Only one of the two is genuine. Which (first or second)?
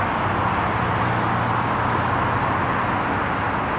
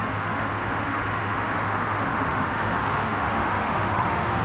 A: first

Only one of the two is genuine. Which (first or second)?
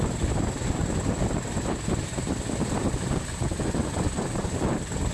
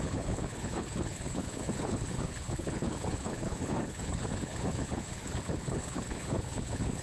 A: first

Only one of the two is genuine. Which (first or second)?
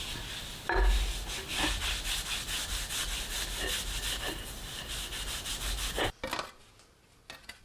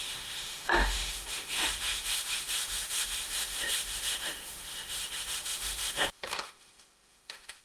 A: first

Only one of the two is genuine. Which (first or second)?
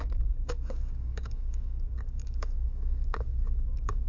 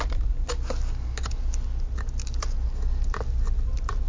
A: second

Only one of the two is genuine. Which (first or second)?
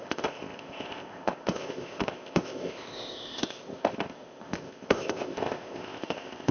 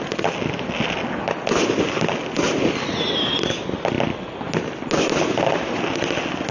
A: second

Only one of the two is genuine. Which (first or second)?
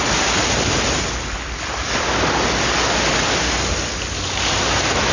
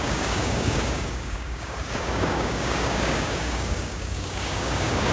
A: first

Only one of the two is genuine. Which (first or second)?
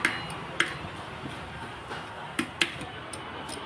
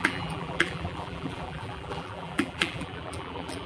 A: first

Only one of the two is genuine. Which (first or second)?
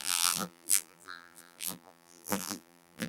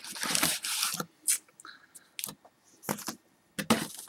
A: second